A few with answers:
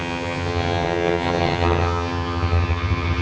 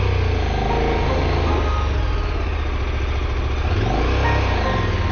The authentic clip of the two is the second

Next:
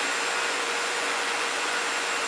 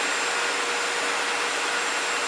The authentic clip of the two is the second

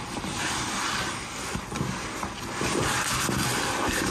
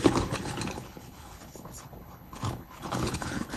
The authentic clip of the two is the first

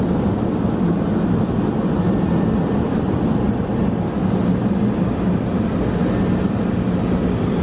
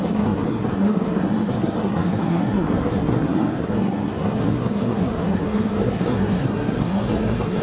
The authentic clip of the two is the first